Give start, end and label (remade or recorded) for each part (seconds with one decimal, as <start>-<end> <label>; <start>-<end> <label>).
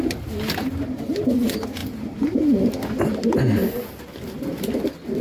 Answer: 0.0-5.2 recorded